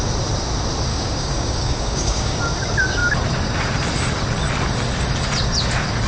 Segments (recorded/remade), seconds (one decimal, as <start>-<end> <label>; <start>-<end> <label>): 0.0-0.9 recorded; 0.9-2.4 remade; 2.4-6.1 recorded